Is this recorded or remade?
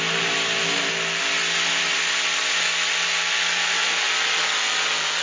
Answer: recorded